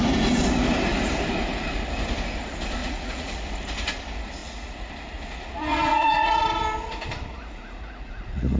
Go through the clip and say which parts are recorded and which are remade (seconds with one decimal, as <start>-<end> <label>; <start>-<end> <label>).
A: 0.0-2.8 recorded; 2.8-3.4 remade; 3.4-4.4 recorded; 4.4-4.9 remade; 4.9-5.7 recorded; 5.7-6.4 remade; 6.4-7.3 recorded; 7.3-8.6 remade